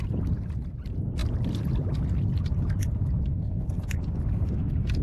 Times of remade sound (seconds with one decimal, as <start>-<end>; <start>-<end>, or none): none